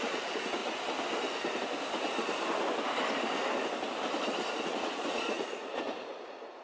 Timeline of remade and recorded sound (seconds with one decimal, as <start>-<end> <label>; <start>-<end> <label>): 0.0-0.6 remade; 0.6-4.6 recorded; 4.6-6.6 remade